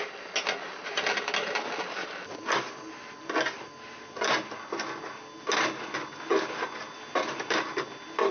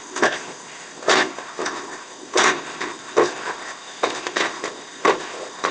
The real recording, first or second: first